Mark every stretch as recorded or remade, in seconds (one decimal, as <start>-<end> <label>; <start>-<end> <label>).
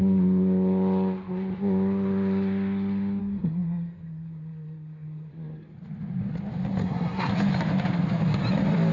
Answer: 0.0-3.2 recorded; 3.2-5.3 remade; 5.3-6.8 recorded; 6.8-7.3 remade; 7.3-8.9 recorded